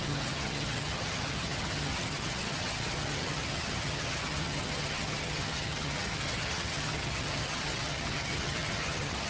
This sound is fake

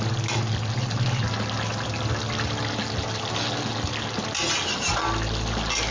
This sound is real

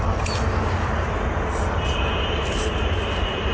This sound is real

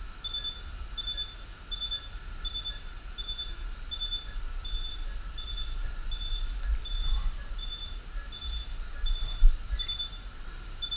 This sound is real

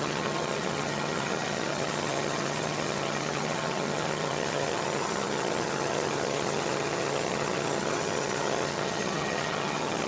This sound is fake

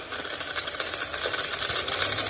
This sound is real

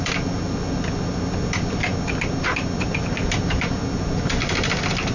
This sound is real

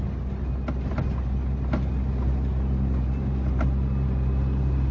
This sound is real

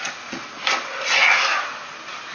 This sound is real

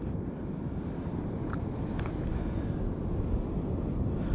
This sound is real